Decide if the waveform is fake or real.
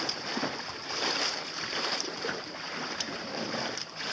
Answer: fake